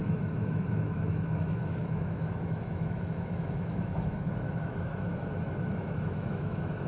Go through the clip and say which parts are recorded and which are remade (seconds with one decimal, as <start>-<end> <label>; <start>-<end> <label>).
0.0-5.1 remade; 5.1-5.7 recorded; 5.7-6.9 remade